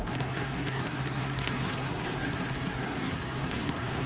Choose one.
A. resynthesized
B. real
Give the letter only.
A